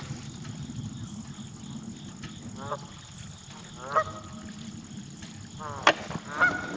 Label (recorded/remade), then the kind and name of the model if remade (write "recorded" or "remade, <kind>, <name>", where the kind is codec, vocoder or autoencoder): recorded